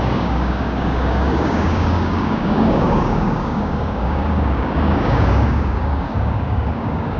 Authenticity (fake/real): fake